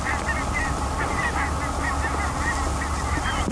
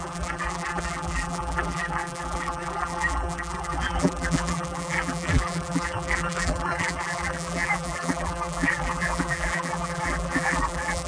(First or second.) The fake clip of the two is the second